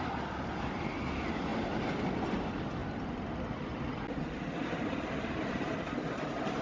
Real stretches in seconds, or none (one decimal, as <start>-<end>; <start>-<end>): 0.0-6.6